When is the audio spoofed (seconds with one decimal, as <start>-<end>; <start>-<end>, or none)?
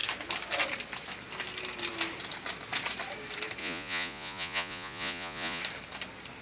3.6-5.6